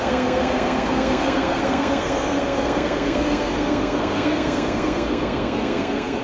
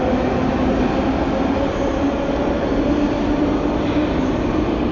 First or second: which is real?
second